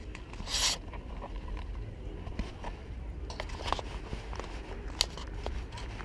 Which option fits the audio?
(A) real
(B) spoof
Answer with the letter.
A